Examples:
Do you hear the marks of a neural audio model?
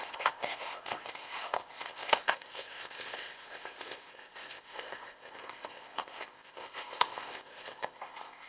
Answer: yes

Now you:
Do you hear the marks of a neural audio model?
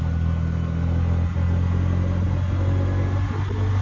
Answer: no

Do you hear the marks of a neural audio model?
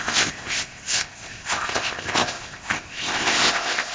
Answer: yes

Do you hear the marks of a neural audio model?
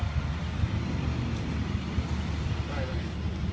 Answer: no